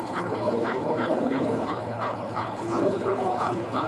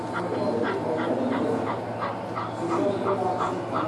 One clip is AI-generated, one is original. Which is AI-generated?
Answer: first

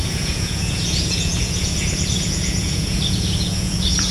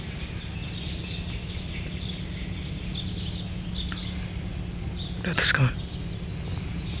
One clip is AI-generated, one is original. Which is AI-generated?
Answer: first